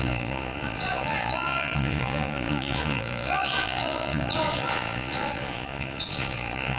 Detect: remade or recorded remade